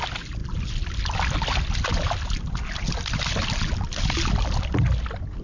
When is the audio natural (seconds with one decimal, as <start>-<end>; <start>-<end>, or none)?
0.0-5.4